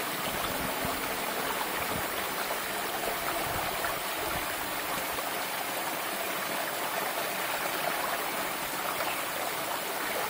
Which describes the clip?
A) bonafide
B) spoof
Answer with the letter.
A